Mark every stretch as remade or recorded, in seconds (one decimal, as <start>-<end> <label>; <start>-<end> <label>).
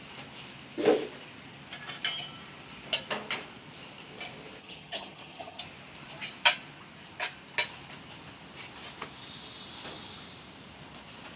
0.0-4.6 recorded; 4.6-5.6 remade; 5.6-11.4 recorded